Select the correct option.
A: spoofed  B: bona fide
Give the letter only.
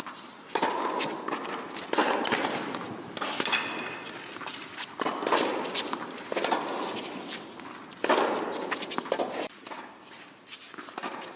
B